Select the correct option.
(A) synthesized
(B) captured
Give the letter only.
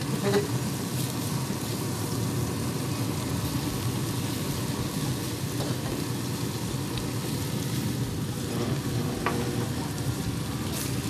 B